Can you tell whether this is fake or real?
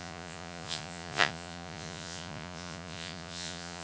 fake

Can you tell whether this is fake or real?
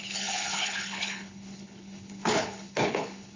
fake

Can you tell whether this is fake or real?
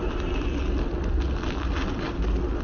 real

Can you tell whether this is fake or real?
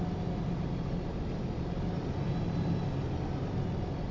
real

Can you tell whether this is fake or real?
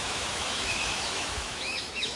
fake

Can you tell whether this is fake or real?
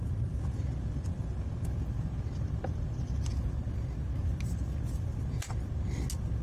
real